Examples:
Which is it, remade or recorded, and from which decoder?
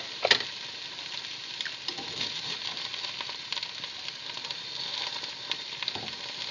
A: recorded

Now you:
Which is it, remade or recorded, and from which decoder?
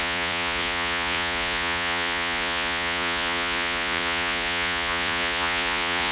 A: remade, vocoder, Vocos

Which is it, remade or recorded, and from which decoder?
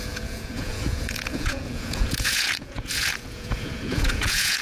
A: remade, vocoder, Vocos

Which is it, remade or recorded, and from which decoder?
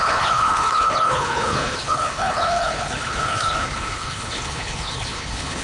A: remade, codec, HILCodec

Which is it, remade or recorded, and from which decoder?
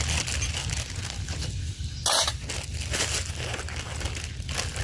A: recorded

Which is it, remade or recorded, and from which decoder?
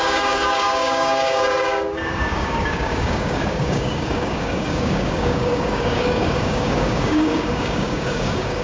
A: remade, codec, DAC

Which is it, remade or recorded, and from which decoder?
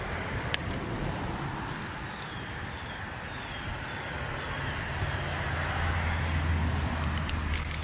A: recorded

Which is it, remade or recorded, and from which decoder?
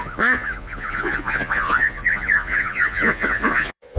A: remade, vocoder, Vocos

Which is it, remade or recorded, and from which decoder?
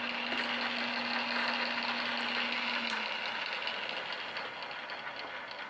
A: recorded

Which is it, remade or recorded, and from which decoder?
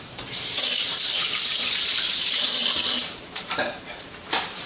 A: remade, vocoder, BigVGAN v2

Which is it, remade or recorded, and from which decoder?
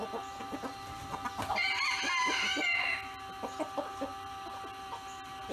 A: recorded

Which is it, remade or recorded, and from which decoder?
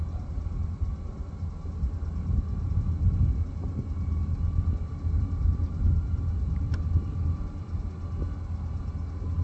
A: recorded